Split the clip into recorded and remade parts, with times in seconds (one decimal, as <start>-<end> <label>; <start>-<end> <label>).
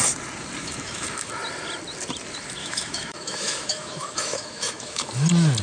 0.0-0.6 recorded; 0.6-1.3 remade; 1.3-2.6 recorded; 2.6-5.1 remade; 5.1-5.6 recorded